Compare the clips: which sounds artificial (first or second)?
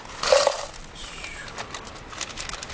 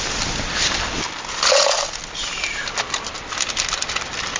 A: second